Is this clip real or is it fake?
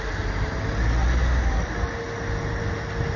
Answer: real